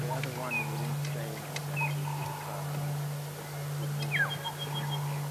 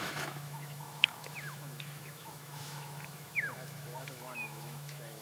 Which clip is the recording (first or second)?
first